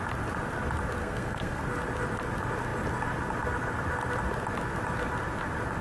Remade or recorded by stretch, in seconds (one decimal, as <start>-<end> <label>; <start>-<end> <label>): 0.0-1.0 recorded; 1.0-1.6 remade; 1.6-5.8 recorded